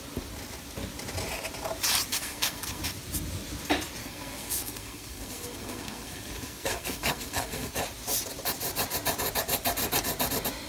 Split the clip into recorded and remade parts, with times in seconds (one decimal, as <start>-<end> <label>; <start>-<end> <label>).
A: 0.0-2.1 recorded; 2.1-2.8 remade; 2.8-4.0 recorded; 4.0-7.8 remade; 7.8-10.7 recorded